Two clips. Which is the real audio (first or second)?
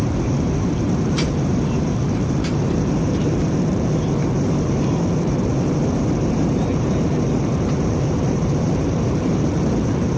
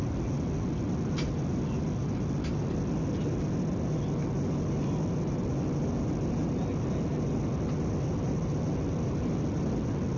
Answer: second